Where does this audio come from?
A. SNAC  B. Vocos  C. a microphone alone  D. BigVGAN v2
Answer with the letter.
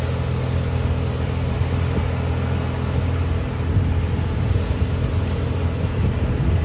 C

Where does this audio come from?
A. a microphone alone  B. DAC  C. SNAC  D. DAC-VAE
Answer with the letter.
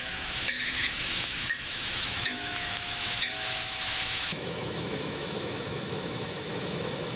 D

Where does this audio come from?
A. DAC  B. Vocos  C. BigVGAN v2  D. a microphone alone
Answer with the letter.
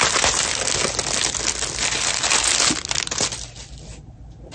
D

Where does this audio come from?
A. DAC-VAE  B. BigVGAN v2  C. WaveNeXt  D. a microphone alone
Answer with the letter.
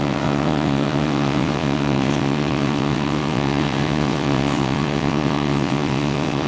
C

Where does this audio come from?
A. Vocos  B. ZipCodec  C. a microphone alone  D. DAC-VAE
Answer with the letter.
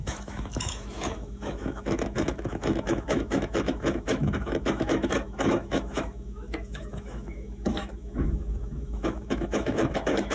D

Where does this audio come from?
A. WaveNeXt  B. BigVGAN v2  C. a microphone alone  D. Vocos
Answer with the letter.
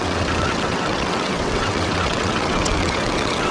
A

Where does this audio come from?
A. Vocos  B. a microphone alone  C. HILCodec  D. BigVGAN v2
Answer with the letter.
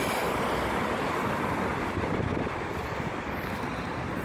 B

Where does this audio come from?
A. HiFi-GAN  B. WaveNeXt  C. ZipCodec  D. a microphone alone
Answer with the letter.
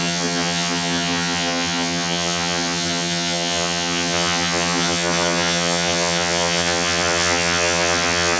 A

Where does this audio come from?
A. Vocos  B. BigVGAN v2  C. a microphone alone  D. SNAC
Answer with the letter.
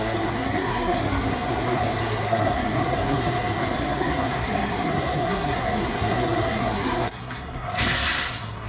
D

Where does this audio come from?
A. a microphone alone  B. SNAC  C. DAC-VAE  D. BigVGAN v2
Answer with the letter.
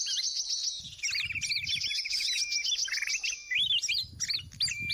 A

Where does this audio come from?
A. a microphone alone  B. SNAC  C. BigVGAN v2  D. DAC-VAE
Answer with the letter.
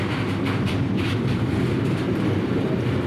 A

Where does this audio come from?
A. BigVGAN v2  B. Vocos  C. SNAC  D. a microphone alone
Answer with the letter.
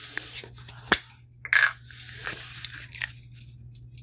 D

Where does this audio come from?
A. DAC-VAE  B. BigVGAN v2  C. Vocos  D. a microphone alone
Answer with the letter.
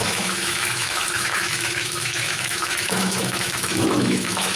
A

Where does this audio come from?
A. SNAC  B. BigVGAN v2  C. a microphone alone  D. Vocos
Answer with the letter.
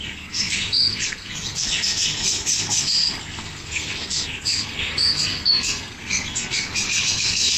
A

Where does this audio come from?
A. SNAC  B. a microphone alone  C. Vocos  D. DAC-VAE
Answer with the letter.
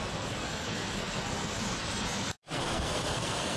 A